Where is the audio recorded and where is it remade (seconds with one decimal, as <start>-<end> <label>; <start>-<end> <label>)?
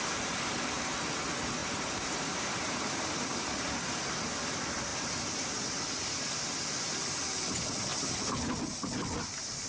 0.0-1.6 recorded; 1.6-4.0 remade; 4.0-4.9 recorded; 4.9-6.2 remade; 6.2-7.9 recorded; 7.9-8.5 remade; 8.5-9.7 recorded